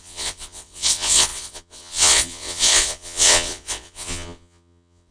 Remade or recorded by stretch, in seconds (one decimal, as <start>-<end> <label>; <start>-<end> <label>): 0.0-5.1 remade